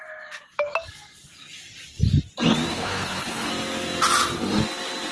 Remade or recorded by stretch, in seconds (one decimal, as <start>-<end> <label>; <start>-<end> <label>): 0.0-2.7 recorded; 2.7-3.5 remade; 3.5-5.1 recorded